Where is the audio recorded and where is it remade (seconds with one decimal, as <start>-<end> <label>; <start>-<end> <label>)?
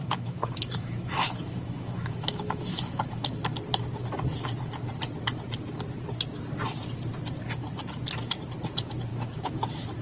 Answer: 0.0-3.4 remade; 3.4-9.1 recorded; 9.1-9.6 remade; 9.6-10.0 recorded